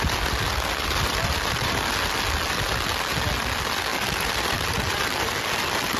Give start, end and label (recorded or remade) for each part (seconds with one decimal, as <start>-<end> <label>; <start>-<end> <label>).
0.0-0.8 recorded; 0.8-1.5 remade; 1.5-3.9 recorded; 3.9-5.5 remade; 5.5-6.0 recorded